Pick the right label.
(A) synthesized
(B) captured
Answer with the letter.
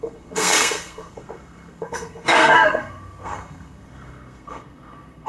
A